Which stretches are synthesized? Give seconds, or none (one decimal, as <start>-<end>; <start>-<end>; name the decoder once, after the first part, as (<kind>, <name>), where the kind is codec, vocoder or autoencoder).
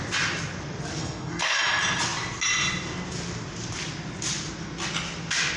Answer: 1.0-1.6 (codec, SNAC)